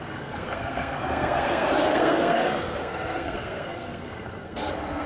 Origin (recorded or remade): remade